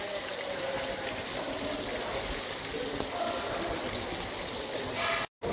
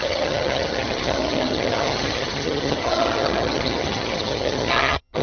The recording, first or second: first